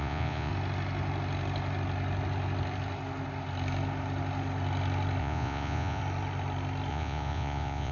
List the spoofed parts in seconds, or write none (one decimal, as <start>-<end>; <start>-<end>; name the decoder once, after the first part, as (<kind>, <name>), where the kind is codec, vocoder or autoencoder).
0.0-0.5 (vocoder, Vocos); 5.2-6.0; 6.9-7.9